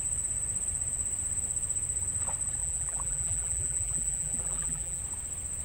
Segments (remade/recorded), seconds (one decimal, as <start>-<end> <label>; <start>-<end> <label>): 0.0-2.6 recorded; 2.6-5.0 remade; 5.0-5.6 recorded